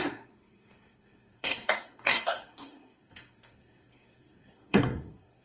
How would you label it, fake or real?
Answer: fake